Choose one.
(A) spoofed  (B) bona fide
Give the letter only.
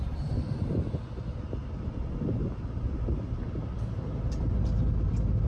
B